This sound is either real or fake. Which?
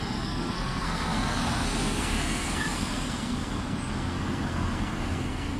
fake